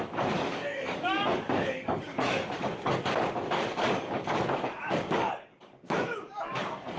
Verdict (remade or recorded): remade